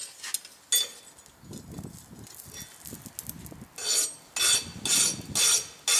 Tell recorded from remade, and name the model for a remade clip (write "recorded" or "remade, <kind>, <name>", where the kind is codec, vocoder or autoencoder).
recorded